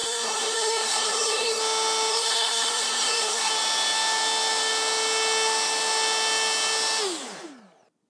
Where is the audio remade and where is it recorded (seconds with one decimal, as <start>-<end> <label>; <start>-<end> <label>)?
0.0-1.6 remade; 1.6-2.1 recorded; 2.1-3.5 remade; 3.5-8.1 recorded